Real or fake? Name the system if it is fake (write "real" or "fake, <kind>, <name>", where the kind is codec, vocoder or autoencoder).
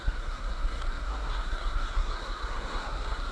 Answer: fake, codec, SNAC